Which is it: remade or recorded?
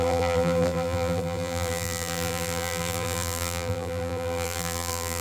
remade